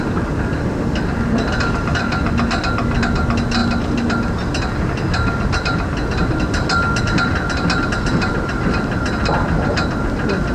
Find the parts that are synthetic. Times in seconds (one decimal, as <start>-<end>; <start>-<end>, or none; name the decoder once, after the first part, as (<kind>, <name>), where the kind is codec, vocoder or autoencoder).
none